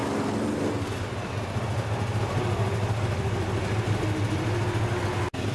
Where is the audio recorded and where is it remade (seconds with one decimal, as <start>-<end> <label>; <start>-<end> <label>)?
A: 0.0-5.5 recorded